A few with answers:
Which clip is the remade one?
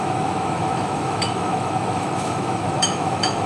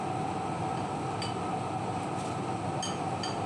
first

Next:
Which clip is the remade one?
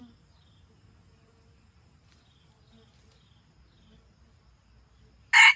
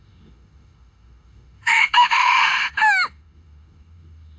second